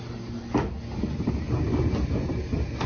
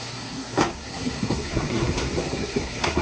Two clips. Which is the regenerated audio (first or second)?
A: second